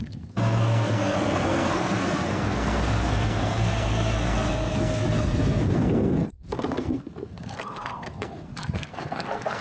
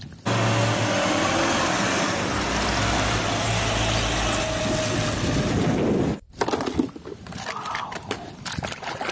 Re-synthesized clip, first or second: first